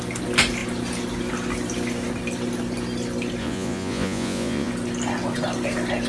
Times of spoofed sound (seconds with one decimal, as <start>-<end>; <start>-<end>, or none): 3.4-4.7

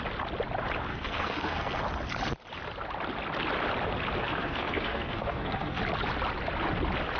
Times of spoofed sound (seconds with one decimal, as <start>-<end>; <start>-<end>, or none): 0.9-1.8; 4.2-5.8

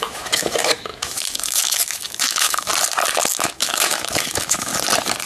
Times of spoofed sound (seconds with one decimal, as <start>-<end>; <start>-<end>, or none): 0.0-2.7; 3.3-4.7

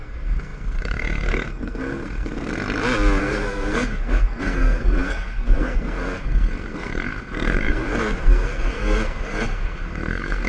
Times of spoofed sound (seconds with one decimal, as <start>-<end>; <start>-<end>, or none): 0.0-2.5; 3.2-10.5

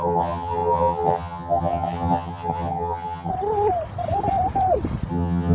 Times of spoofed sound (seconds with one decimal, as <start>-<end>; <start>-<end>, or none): 0.0-3.3; 5.1-5.5

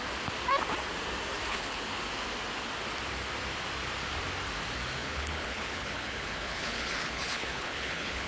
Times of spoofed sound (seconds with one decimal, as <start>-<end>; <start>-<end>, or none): 1.5-2.0; 5.0-8.3

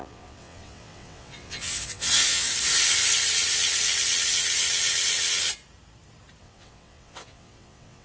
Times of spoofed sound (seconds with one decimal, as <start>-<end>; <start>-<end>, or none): 0.0-2.5; 6.4-8.0